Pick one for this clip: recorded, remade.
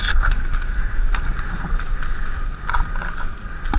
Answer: recorded